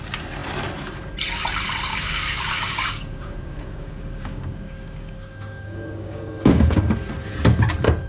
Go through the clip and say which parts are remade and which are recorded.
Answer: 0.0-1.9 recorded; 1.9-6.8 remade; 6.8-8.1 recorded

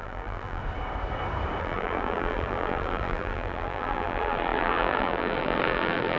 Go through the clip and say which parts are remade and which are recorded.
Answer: 0.0-0.6 remade; 0.6-1.6 recorded; 1.6-6.2 remade